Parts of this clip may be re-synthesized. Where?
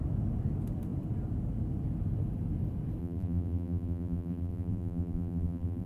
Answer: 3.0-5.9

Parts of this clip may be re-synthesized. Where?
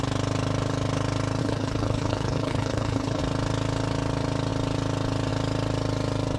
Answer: 1.4-3.2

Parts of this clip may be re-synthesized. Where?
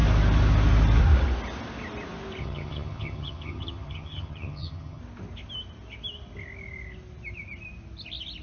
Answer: 2.4-5.0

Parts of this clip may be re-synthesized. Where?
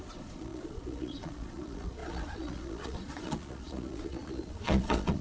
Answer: 0.0-5.2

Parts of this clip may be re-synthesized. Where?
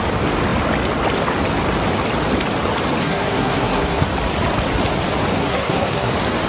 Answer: 3.0-4.0; 5.3-6.1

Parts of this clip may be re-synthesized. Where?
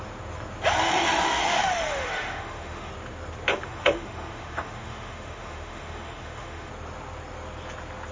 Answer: 0.9-2.9; 3.5-6.7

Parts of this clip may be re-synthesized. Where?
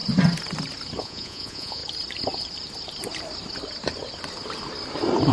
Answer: 1.0-1.8